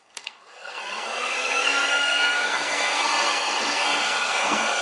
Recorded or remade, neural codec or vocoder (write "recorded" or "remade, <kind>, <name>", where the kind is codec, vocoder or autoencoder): remade, codec, SNAC